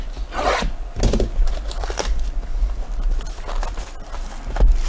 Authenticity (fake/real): real